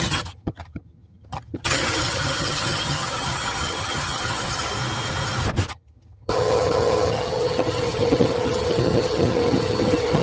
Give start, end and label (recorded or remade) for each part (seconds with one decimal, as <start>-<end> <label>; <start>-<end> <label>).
0.0-4.7 remade; 4.7-5.7 recorded; 5.7-10.2 remade